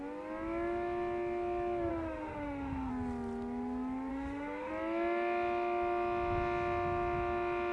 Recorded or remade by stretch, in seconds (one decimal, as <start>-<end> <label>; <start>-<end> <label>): 0.0-1.9 recorded; 1.9-2.9 remade; 2.9-4.1 recorded; 4.1-4.7 remade; 4.7-7.7 recorded